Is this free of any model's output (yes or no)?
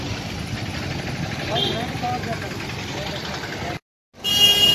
yes